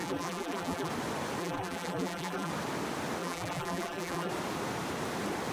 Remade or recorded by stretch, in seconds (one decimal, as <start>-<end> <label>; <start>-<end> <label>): 0.0-0.9 remade; 0.9-1.4 recorded; 1.4-2.5 remade; 2.5-3.2 recorded; 3.2-4.3 remade; 4.3-5.5 recorded